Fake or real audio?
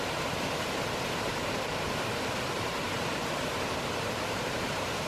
fake